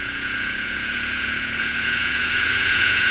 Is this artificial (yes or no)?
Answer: yes